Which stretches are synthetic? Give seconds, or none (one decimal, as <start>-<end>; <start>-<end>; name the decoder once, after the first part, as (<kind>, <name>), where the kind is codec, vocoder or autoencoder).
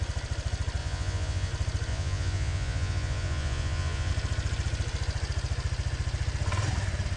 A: 0.8-1.5 (vocoder, Vocos); 1.9-4.1